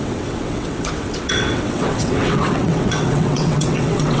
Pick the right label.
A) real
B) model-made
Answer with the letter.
B